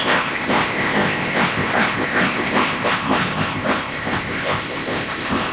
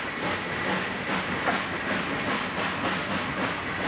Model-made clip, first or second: first